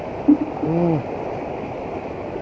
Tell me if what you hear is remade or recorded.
recorded